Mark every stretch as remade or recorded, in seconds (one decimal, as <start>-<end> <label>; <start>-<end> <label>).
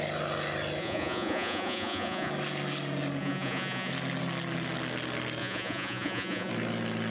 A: 0.0-0.8 recorded; 0.8-2.3 remade; 2.3-3.2 recorded; 3.2-3.9 remade; 3.9-5.4 recorded; 5.4-6.5 remade; 6.5-7.1 recorded